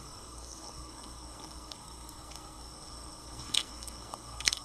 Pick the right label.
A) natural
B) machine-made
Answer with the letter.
B